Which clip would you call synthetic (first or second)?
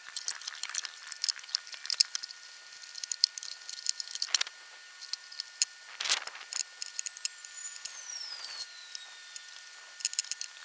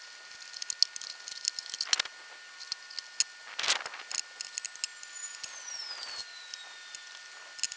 first